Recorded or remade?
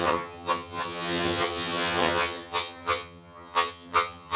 remade